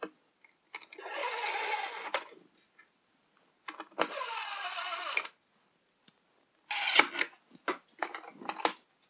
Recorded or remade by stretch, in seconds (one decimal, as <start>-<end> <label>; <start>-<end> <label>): 0.0-1.2 recorded; 1.2-2.3 remade; 2.3-9.1 recorded